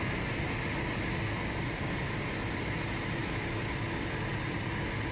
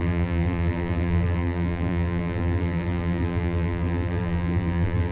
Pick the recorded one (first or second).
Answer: first